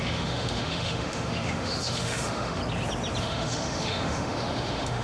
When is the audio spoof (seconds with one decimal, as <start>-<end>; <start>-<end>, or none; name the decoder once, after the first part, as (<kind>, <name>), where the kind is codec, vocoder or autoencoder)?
0.0-2.6 (autoencoder, DAC-VAE); 3.2-5.0